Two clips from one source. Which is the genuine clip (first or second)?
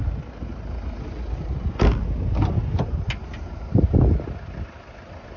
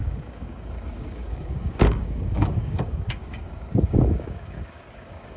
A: first